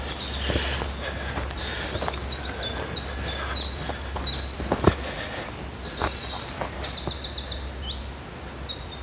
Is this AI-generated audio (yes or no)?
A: no